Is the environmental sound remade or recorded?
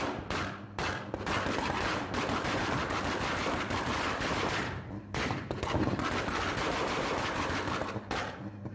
recorded